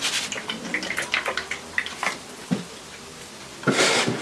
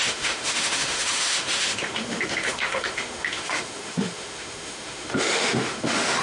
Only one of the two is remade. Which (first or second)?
second